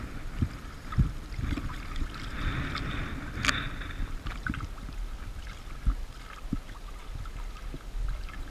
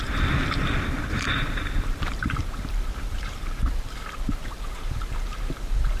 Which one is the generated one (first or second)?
second